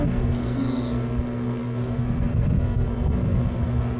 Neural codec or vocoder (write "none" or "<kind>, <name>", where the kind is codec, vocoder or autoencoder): codec, SNAC